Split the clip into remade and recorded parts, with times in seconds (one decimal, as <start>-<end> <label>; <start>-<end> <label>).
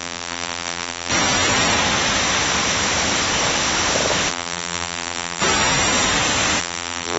0.0-1.1 remade; 1.1-4.3 recorded; 4.3-5.4 remade; 5.4-6.6 recorded; 6.6-7.2 remade